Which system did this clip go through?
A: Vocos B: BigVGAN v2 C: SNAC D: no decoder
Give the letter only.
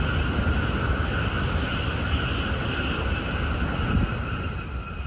D